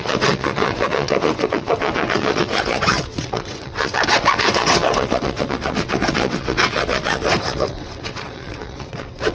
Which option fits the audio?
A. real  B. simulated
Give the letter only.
B